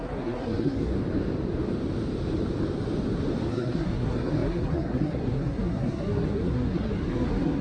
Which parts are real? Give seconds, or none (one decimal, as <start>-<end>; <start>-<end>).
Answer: 0.9-3.5